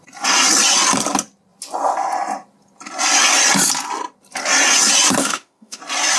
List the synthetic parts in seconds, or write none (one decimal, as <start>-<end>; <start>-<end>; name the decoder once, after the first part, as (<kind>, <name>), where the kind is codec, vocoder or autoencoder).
5.2-5.8 (autoencoder, DAC-VAE)